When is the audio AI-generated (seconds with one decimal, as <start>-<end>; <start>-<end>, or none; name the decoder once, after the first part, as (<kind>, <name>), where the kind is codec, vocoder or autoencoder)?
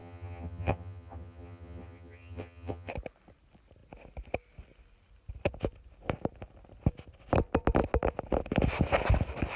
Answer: 0.0-2.9 (vocoder, HiFi-GAN)